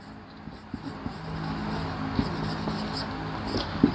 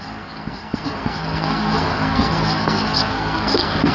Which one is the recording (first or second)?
first